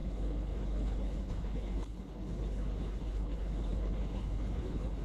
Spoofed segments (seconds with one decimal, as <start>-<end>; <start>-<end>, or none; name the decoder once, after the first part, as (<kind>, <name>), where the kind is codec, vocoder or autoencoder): 0.0-5.0 (codec, HILCodec)

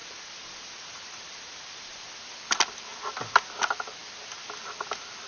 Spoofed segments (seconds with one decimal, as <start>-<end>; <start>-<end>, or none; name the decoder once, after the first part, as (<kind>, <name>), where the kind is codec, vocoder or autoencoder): 0.0-2.4 (vocoder, BigVGAN v2); 2.9-3.5

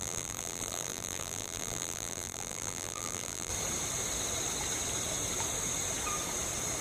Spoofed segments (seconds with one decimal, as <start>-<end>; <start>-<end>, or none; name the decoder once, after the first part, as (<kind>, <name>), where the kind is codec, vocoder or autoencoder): 0.0-3.5 (vocoder, BigVGAN v2)

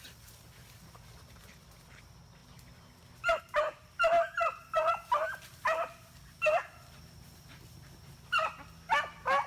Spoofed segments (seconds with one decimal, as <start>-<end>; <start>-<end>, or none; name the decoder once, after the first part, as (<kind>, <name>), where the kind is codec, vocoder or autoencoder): none

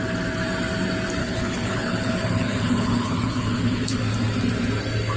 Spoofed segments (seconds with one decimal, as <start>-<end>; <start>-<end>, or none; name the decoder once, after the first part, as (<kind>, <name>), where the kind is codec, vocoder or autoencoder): 1.2-4.0 (codec, HILCodec)

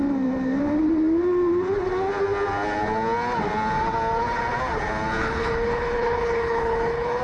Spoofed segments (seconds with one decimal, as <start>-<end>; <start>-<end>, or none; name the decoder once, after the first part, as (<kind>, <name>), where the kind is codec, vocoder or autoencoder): 5.2-7.2 (codec, HILCodec)

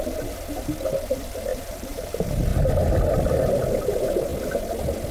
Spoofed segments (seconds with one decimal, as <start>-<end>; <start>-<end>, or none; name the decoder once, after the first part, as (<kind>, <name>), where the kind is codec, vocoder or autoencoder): 1.5-2.1 (vocoder, BigVGAN v2)